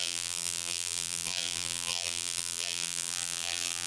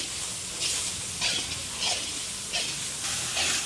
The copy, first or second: first